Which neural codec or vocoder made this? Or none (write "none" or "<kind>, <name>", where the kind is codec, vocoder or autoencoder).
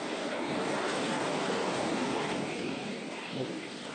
codec, DAC